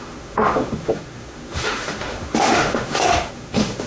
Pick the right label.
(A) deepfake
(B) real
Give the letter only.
A